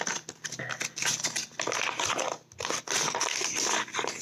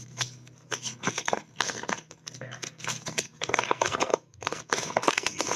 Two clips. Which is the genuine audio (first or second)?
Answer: first